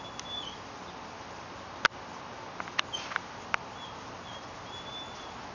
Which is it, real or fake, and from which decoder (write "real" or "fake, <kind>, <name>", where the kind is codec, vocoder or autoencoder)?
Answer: real